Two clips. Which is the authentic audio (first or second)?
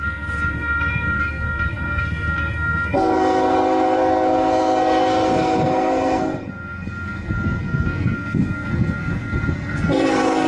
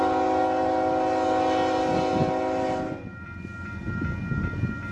second